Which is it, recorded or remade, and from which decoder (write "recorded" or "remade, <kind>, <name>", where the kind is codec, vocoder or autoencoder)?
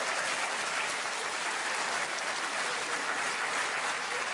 recorded